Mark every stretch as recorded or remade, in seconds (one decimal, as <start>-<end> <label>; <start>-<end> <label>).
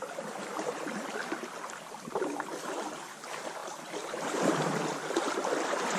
0.0-6.0 recorded